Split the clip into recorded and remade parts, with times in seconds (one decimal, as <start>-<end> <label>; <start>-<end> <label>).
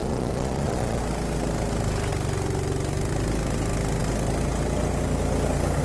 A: 0.0-1.0 remade; 1.0-5.8 recorded